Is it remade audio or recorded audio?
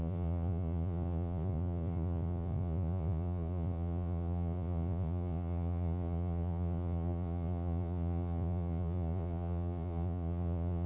remade